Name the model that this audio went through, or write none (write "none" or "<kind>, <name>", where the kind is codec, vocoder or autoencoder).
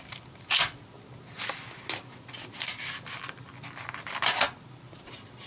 none